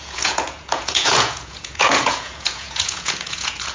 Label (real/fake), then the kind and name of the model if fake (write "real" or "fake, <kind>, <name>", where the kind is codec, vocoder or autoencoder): fake, vocoder, Vocos